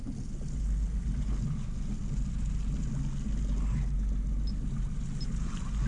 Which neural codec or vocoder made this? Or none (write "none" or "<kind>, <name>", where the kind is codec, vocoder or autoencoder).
none